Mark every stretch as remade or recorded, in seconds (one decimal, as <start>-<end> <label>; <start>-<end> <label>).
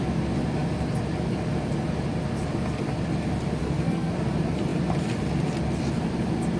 0.0-3.6 recorded; 3.6-4.1 remade; 4.1-6.6 recorded